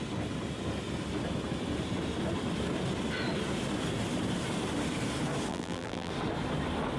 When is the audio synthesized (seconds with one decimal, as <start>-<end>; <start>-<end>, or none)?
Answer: 5.5-6.1